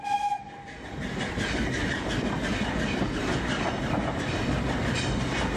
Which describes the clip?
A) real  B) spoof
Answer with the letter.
A